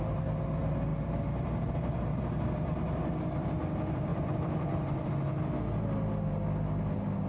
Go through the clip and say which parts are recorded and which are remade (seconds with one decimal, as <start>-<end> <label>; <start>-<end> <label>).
0.0-0.9 recorded; 0.9-2.4 remade; 2.4-4.1 recorded; 4.1-5.1 remade; 5.1-7.3 recorded